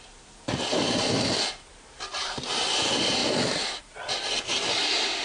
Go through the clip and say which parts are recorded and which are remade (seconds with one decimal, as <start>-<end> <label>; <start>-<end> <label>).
0.0-5.2 recorded